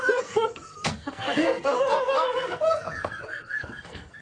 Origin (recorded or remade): remade